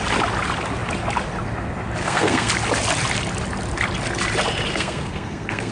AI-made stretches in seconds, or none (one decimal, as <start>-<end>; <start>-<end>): 2.0-2.5; 4.7-5.7